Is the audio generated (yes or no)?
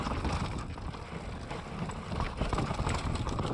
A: no